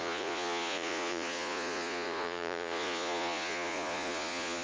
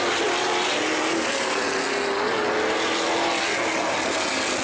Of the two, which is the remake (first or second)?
first